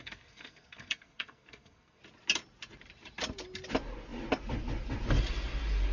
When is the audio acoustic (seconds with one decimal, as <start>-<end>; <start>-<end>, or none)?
2.0-5.9